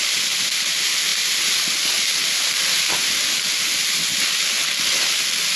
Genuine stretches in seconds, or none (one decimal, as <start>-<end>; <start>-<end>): 0.0-5.6